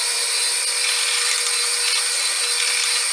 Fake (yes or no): no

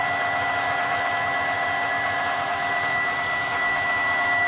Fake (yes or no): yes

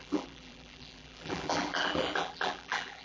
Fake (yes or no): yes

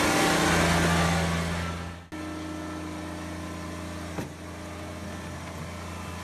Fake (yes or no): no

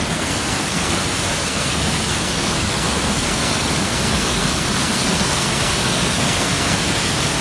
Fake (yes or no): yes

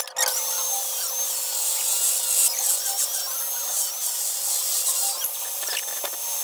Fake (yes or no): no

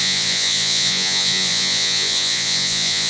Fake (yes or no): yes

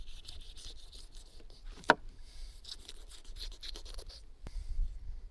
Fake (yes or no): no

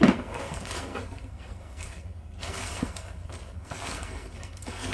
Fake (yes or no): yes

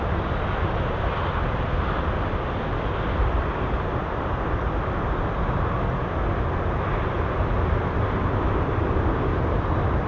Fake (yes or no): no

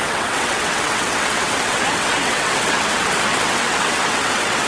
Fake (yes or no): yes